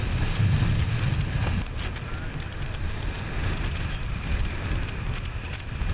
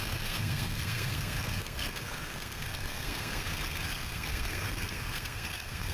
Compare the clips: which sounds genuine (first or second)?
first